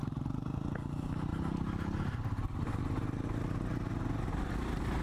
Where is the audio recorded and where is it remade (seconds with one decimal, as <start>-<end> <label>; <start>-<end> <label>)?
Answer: 0.0-5.0 recorded